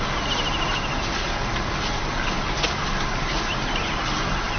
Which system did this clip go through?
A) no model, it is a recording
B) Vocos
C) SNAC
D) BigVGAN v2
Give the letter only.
A